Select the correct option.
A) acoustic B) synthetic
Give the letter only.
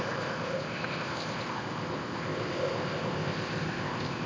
B